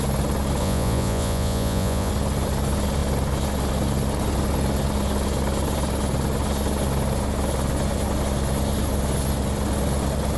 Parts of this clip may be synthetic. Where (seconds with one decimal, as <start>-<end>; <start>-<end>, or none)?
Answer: 0.6-2.1